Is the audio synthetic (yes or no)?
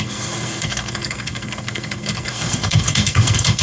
yes